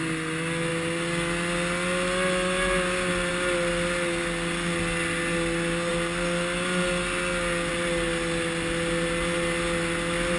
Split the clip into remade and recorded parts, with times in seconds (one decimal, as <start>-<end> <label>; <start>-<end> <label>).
0.0-10.4 recorded